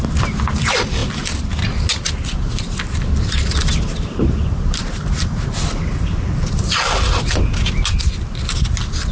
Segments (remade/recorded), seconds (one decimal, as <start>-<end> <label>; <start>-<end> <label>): 0.0-9.1 recorded

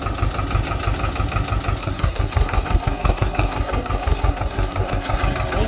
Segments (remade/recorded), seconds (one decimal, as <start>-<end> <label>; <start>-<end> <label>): 0.0-1.8 recorded; 1.8-5.2 remade; 5.2-5.7 recorded